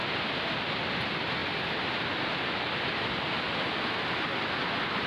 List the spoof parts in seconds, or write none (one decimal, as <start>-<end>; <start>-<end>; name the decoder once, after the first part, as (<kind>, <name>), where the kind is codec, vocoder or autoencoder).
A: none